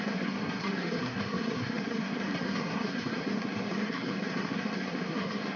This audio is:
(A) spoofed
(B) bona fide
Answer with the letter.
A